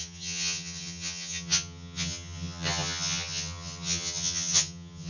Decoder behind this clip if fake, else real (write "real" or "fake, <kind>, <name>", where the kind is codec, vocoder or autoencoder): fake, vocoder, HiFi-GAN